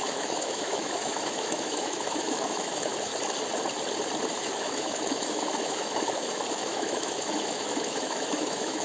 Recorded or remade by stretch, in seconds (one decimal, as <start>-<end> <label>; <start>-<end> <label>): 0.0-3.1 remade; 3.1-4.3 recorded; 4.3-8.8 remade